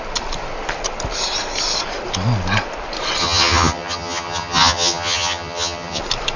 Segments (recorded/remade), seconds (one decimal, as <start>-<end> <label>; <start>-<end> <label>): 0.0-3.2 recorded; 3.2-6.0 remade; 6.0-6.4 recorded